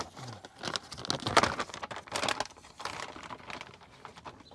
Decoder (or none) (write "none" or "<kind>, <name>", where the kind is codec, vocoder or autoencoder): none